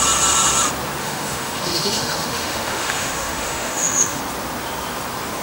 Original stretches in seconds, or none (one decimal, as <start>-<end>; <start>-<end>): 0.0-1.0; 4.2-5.4